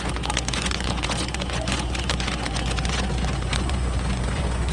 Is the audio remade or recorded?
remade